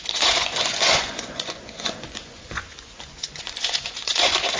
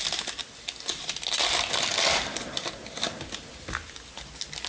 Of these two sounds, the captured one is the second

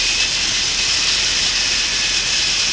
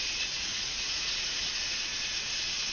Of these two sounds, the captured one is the first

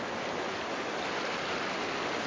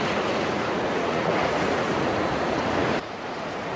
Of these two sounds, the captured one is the first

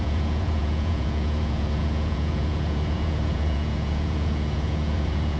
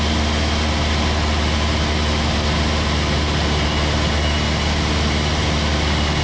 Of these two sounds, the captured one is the second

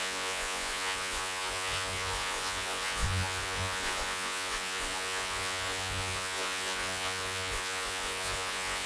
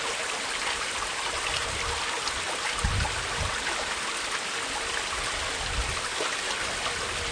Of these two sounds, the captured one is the second